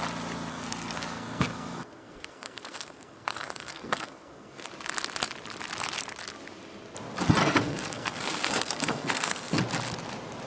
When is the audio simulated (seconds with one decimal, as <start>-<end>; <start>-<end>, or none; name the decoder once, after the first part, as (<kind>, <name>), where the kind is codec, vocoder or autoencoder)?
0.5-4.7 (codec, SNAC); 7.4-9.6